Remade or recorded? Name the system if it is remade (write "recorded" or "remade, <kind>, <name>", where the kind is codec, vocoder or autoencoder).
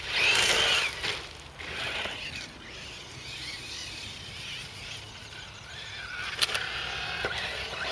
recorded